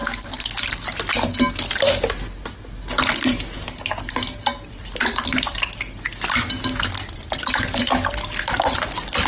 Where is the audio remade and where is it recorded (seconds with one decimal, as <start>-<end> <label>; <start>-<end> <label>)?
0.0-9.3 recorded

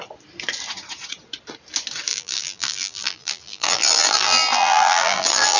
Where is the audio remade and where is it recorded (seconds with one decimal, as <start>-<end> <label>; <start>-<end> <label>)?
0.0-2.1 recorded; 2.1-5.6 remade

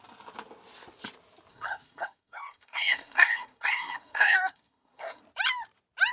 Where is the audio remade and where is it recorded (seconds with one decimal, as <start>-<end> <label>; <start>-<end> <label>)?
0.0-1.5 recorded; 1.5-5.2 remade; 5.2-6.1 recorded